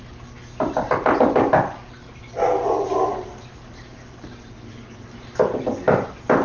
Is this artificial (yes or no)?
no